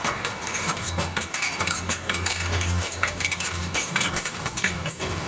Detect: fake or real fake